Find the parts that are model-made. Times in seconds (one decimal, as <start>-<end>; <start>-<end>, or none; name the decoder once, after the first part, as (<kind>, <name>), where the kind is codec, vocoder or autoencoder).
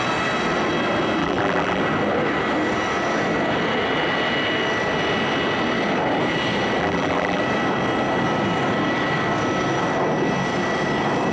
1.2-1.8 (vocoder, BigVGAN v2); 6.8-7.4